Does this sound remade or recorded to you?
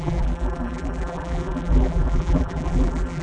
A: remade